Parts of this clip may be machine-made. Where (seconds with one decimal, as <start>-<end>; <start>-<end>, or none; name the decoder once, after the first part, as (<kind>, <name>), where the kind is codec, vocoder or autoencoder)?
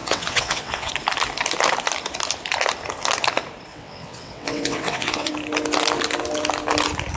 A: 0.0-0.9 (vocoder, WaveNeXt); 3.7-5.3